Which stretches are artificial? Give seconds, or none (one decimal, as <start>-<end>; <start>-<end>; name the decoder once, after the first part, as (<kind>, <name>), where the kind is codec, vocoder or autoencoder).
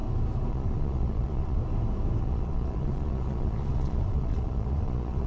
0.5-1.6 (vocoder, Vocos); 2.2-5.3